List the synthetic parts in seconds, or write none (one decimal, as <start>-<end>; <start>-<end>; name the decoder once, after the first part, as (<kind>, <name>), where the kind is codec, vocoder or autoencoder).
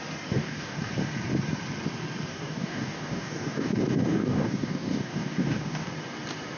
0.4-0.9 (codec, DAC); 2.3-5.9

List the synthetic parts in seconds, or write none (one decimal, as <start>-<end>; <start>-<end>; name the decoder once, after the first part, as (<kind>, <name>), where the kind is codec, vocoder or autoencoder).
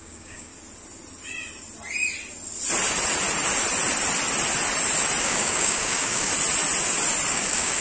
0.0-0.5 (codec, DAC); 5.2-6.3; 7.3-7.8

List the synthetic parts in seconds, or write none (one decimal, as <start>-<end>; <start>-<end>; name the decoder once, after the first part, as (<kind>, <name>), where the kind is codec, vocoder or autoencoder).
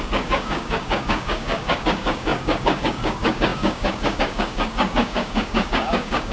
0.0-6.3 (codec, DAC)